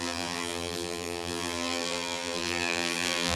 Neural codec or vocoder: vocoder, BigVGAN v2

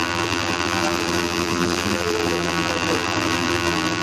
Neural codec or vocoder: vocoder, BigVGAN v2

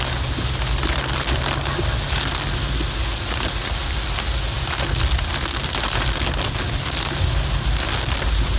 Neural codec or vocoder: none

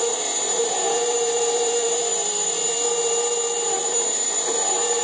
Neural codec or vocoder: vocoder, BigVGAN v2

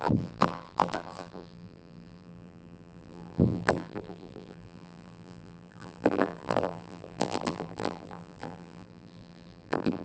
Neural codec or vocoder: vocoder, BigVGAN v2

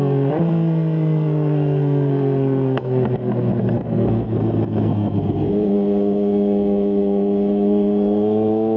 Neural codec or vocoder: codec, SNAC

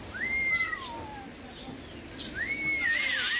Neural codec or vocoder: none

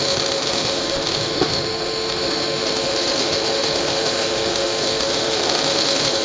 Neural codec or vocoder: autoencoder, DAC-VAE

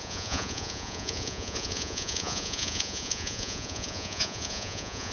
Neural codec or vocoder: vocoder, Vocos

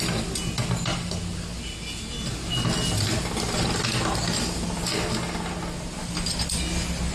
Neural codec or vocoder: none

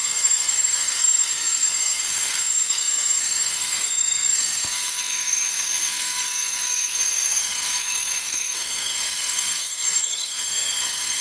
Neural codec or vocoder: codec, SNAC